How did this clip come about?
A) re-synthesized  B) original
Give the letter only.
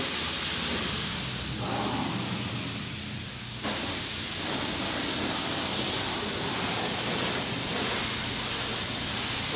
B